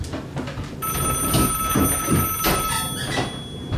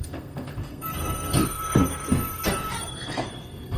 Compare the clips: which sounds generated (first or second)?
second